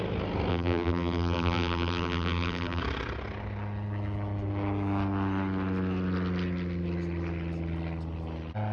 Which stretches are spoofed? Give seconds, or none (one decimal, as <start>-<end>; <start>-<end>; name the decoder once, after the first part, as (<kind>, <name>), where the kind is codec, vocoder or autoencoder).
0.5-2.8 (vocoder, BigVGAN v2)